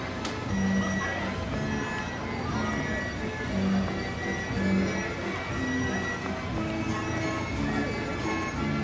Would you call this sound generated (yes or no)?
no